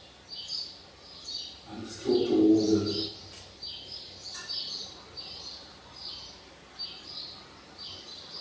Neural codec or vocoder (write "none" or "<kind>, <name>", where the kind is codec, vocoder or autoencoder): none